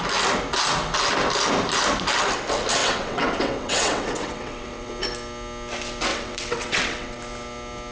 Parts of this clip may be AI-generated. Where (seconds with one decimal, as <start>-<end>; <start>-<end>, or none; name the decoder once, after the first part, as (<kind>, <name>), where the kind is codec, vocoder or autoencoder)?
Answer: 2.8-4.9 (vocoder, WaveNeXt); 6.1-7.2